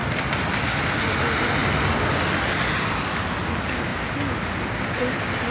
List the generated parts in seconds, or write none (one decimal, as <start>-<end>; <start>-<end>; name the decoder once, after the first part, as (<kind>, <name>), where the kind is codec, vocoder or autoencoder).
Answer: 0.0-1.0 (vocoder, BigVGAN v2); 1.6-3.3